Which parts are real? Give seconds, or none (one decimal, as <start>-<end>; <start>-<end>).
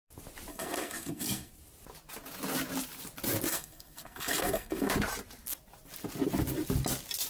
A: 0.0-0.5; 1.5-3.5; 4.9-7.3